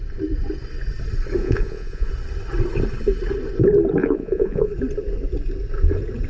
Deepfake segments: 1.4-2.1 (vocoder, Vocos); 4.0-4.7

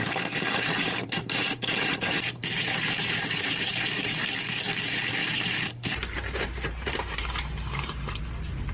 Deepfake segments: 0.0-4.3 (vocoder, BigVGAN v2); 5.2-8.2